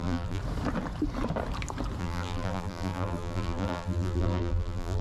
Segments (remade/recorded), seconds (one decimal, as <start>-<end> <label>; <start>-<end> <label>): 0.0-0.4 remade; 0.4-2.0 recorded; 2.0-5.0 remade